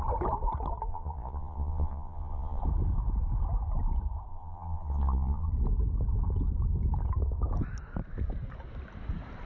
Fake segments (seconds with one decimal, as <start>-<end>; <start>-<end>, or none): 0.9-2.6; 4.3-5.5